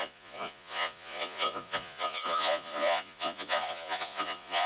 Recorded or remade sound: remade